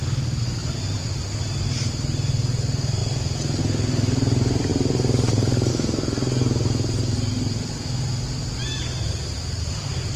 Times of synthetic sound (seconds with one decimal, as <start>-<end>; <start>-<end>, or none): 0.6-1.9; 4.7-5.7